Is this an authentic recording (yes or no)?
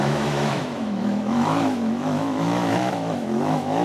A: no